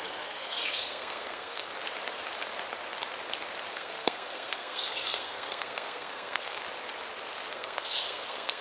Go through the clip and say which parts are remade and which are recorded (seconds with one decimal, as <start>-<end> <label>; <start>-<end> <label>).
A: 0.0-1.7 remade; 1.7-3.7 recorded; 3.7-6.6 remade; 6.6-7.5 recorded; 7.5-8.6 remade